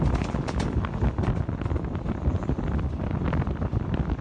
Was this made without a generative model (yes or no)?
yes